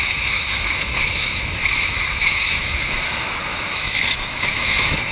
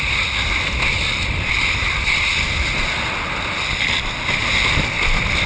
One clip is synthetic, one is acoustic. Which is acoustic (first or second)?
second